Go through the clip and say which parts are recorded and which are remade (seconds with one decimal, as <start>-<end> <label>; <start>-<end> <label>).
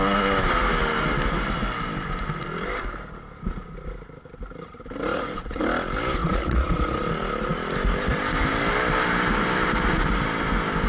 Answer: 0.0-5.1 recorded; 5.1-5.6 remade; 5.6-6.2 recorded; 6.2-7.0 remade; 7.0-10.9 recorded